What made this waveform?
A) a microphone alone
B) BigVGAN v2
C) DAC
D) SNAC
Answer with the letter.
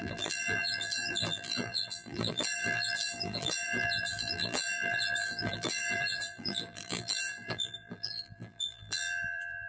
B